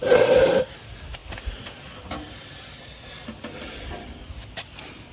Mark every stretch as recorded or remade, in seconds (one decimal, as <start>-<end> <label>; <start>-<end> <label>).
0.0-5.1 recorded